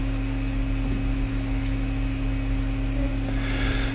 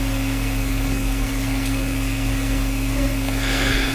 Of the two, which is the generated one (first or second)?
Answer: second